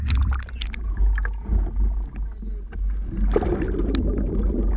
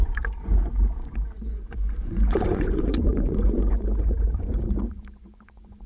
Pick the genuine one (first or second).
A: first